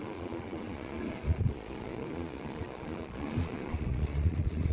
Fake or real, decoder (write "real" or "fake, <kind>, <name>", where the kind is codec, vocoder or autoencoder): fake, vocoder, Vocos